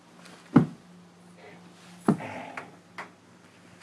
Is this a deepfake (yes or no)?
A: no